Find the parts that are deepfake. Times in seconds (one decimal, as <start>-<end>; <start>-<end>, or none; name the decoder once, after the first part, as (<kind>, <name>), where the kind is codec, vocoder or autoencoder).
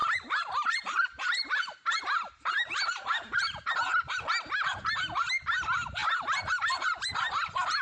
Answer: 0.0-3.7 (vocoder, BigVGAN v2); 6.0-7.3